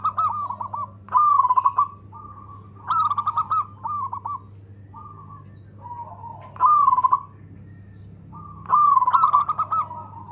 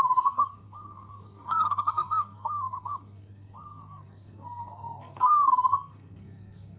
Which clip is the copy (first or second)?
second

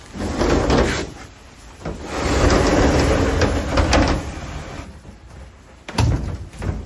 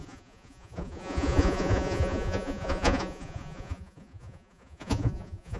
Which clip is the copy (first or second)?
second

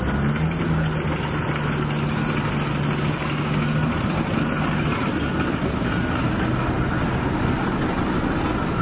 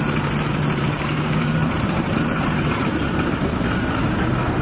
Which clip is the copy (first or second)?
second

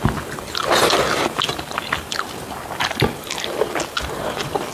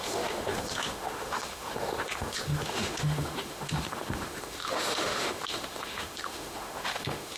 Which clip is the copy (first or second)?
second